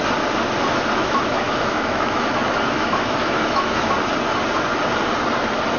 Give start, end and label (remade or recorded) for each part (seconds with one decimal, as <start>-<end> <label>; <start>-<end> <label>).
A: 0.0-0.7 recorded; 0.7-3.9 remade; 3.9-5.8 recorded